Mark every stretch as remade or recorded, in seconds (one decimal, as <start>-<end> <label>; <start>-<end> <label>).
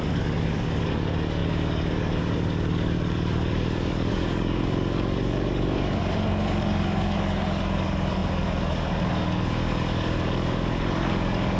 0.0-11.6 remade